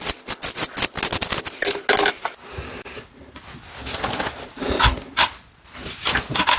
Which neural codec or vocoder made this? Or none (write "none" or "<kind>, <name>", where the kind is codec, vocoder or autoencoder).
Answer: none